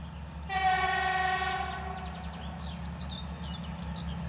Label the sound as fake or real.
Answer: real